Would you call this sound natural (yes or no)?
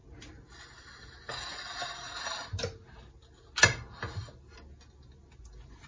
yes